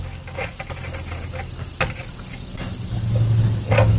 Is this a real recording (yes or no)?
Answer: yes